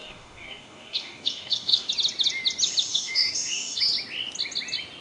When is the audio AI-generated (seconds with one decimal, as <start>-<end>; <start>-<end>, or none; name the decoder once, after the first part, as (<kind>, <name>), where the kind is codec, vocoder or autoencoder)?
0.0-1.9 (codec, DAC); 2.9-3.8